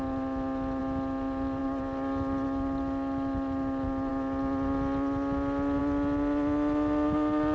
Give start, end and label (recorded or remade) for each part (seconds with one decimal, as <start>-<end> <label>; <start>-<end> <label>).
0.0-7.5 recorded